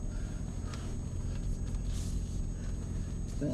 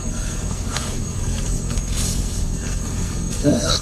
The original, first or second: first